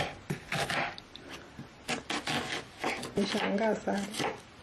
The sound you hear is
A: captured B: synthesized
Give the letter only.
A